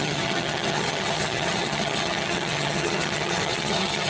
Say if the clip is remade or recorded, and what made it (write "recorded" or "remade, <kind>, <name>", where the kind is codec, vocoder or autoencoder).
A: remade, vocoder, HiFi-GAN